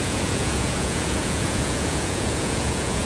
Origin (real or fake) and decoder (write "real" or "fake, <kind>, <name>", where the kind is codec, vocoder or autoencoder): fake, vocoder, Vocos